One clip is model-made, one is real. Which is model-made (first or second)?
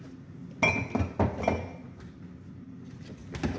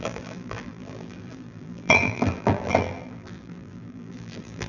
second